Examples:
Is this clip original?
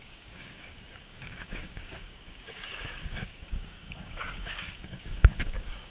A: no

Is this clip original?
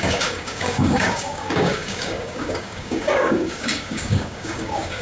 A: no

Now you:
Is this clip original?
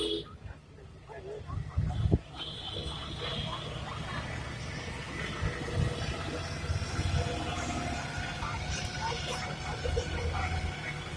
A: yes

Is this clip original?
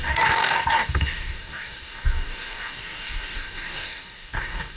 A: no